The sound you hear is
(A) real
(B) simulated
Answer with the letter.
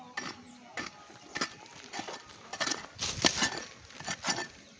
A